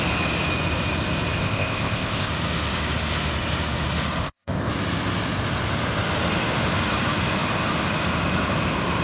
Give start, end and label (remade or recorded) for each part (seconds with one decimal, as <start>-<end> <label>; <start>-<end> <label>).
0.0-1.4 recorded; 1.4-2.3 remade; 2.3-4.2 recorded; 4.2-4.7 remade; 4.7-9.0 recorded